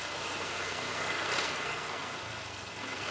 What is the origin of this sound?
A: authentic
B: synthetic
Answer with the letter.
B